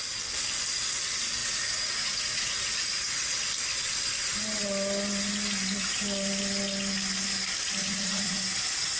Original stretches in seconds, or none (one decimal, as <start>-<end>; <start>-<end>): 0.0-1.4; 3.5-7.8; 8.4-9.0